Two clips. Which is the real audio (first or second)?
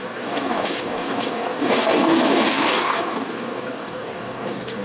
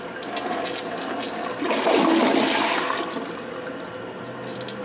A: second